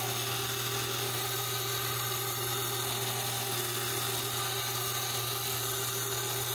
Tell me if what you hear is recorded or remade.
recorded